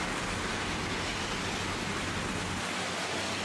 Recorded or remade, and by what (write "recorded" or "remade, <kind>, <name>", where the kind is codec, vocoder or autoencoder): recorded